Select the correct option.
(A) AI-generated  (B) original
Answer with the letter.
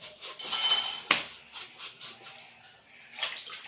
B